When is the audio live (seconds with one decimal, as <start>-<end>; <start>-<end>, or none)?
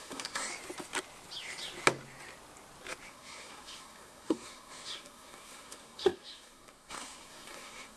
0.5-3.1